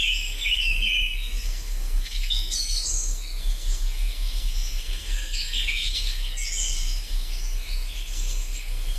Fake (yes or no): yes